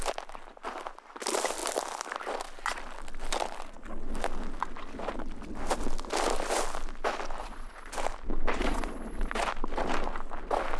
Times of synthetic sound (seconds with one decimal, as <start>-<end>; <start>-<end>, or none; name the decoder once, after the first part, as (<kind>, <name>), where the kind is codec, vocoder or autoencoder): 7.4-7.9 (vocoder, Vocos); 8.6-9.4